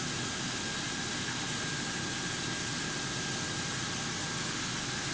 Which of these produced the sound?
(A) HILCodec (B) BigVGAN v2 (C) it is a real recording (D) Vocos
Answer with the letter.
C